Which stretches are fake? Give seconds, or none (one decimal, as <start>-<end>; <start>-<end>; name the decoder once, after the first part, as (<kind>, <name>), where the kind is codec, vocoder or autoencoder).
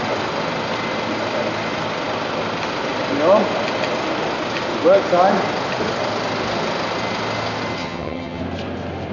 7.8-8.4 (vocoder, HiFi-GAN)